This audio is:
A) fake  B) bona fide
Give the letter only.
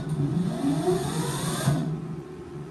A